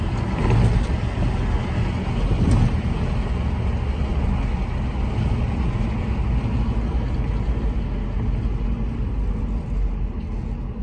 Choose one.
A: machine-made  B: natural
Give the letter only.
B